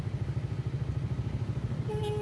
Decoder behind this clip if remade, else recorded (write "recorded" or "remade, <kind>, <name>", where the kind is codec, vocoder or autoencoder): recorded